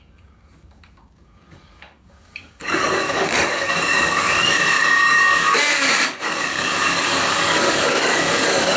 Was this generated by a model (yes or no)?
yes